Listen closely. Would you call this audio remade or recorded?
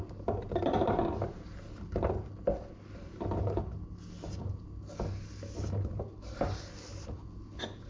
recorded